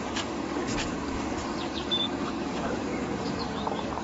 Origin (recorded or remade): remade